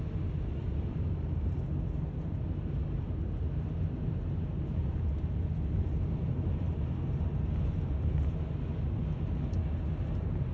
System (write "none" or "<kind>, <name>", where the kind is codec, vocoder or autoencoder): none